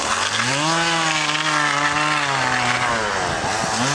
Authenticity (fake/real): real